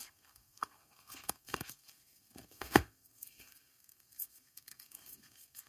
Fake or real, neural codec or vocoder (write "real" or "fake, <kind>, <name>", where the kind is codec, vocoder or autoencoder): fake, codec, SNAC